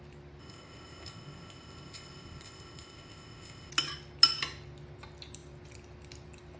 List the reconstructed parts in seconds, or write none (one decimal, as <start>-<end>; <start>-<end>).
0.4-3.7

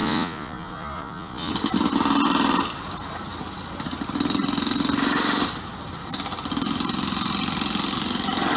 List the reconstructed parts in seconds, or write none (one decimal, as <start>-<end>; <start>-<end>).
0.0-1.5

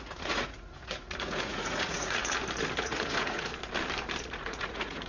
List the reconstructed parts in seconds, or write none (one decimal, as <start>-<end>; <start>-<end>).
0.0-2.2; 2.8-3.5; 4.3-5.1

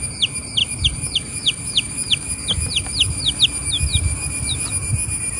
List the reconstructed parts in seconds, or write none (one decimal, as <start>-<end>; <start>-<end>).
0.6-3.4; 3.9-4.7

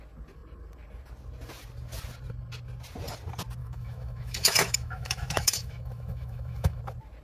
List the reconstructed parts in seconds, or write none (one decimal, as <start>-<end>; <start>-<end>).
3.6-6.8